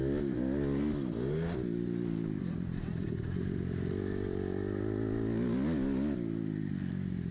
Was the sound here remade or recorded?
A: recorded